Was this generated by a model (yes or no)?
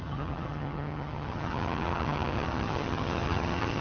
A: yes